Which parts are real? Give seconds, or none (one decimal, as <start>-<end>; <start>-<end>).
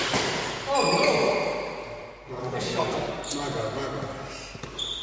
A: 0.0-2.4; 3.1-5.0